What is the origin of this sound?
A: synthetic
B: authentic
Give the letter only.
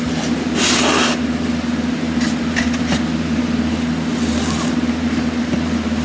B